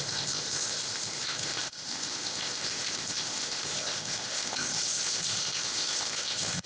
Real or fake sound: fake